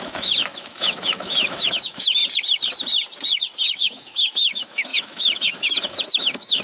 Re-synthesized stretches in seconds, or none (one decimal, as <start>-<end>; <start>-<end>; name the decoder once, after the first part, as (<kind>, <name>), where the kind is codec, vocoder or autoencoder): 0.0-2.2 (autoencoder, DAC-VAE); 3.7-6.6